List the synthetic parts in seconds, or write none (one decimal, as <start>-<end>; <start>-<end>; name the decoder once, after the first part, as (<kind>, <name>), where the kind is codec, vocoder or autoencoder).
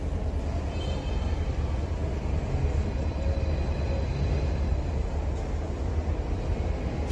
none